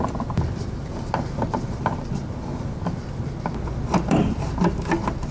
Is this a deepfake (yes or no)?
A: no